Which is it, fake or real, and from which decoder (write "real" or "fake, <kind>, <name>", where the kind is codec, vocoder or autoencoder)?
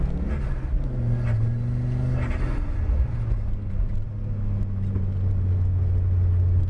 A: real